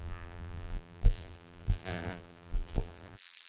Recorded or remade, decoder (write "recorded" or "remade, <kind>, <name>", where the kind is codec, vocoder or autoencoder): remade, vocoder, BigVGAN v2